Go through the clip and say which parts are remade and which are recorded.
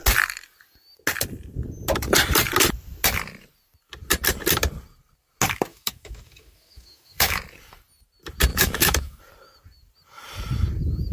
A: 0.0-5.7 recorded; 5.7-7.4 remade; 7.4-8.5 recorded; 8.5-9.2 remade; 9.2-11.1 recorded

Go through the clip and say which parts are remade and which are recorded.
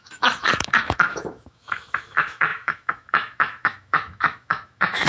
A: 0.0-5.1 remade